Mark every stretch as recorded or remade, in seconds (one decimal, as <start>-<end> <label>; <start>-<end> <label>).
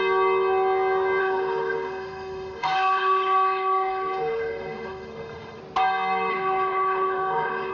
0.0-1.2 recorded; 1.2-5.6 remade; 5.6-6.3 recorded; 6.3-7.7 remade